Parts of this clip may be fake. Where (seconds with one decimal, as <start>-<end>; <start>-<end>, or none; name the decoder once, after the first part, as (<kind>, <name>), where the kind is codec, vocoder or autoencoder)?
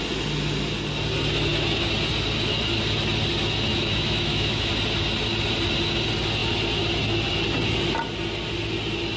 3.7-4.7 (autoencoder, DAC-VAE)